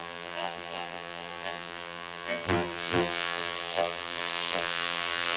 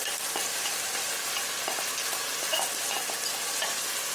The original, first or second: second